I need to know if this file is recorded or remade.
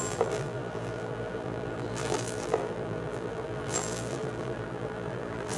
remade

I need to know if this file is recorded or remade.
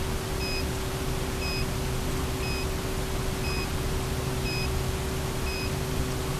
recorded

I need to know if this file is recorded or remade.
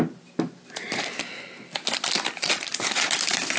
recorded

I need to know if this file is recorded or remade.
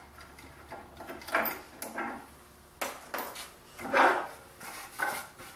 recorded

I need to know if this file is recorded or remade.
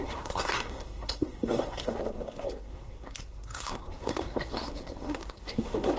remade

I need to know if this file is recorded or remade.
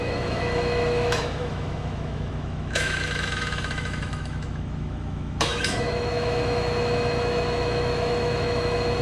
remade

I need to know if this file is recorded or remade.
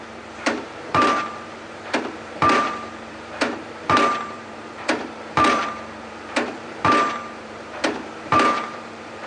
remade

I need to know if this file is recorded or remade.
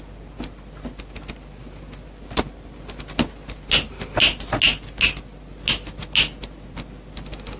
recorded